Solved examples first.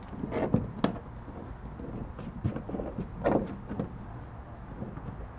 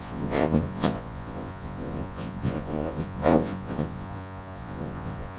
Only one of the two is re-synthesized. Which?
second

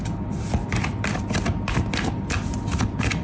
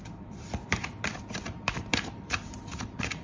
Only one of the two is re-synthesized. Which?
second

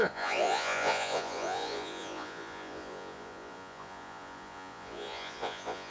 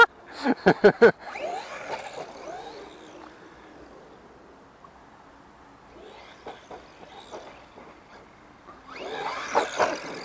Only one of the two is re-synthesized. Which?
first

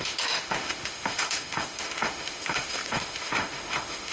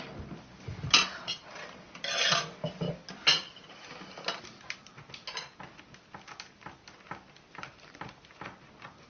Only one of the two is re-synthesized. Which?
first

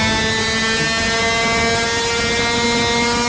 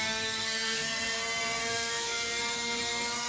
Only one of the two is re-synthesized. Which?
second